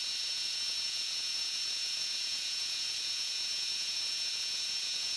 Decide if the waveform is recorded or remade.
remade